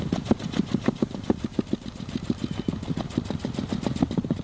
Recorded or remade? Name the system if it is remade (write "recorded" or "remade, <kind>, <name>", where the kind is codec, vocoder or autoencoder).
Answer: recorded